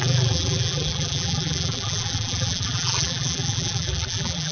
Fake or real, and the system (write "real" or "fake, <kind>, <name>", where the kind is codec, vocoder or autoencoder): fake, vocoder, BigVGAN v2